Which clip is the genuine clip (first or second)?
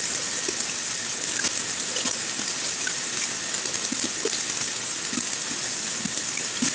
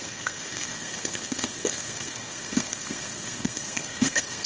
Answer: first